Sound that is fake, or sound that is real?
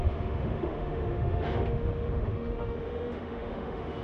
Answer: fake